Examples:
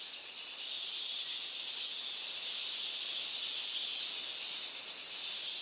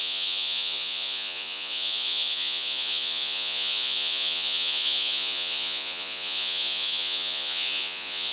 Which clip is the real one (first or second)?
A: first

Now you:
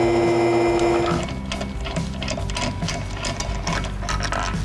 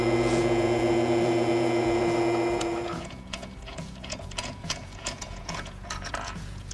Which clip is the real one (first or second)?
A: first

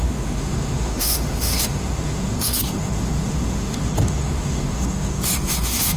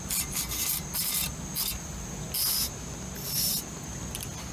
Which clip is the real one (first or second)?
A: second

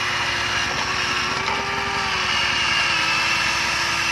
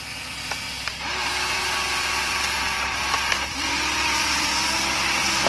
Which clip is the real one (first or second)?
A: first